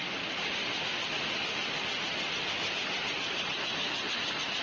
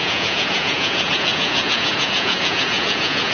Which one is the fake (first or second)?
second